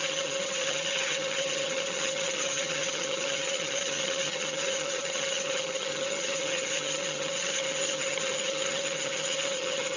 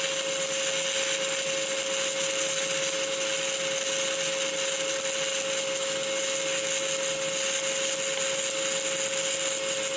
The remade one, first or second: first